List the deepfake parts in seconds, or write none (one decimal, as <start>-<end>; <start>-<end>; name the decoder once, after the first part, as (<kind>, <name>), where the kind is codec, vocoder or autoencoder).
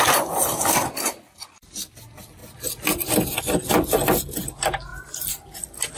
none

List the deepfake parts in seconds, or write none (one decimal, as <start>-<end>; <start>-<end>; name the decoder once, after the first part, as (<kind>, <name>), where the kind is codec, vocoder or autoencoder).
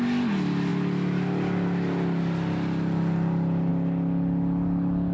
none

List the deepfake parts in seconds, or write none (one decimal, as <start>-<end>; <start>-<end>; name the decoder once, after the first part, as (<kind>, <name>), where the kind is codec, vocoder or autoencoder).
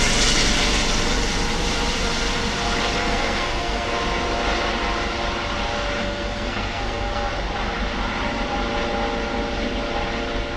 3.0-3.9 (codec, SNAC); 6.0-7.3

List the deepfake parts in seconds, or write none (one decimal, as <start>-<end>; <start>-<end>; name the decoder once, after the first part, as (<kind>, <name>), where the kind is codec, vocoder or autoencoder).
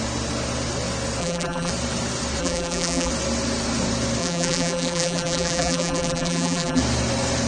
1.2-1.7 (vocoder, BigVGAN v2); 2.4-3.1; 4.2-6.8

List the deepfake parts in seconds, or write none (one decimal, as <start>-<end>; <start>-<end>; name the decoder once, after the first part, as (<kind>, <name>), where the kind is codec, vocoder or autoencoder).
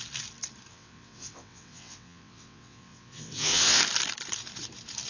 0.7-3.8 (vocoder, WaveNeXt)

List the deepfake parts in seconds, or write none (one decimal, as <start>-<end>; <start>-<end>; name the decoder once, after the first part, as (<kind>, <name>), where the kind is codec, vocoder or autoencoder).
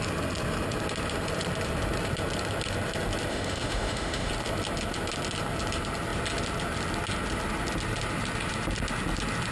3.3-4.3 (autoencoder, DAC-VAE)